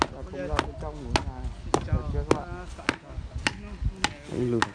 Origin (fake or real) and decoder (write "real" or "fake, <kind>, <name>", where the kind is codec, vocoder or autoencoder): real